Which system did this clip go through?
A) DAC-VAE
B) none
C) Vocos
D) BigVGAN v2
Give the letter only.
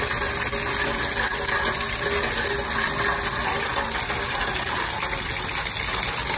B